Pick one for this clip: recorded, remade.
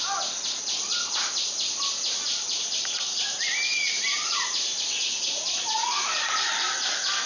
recorded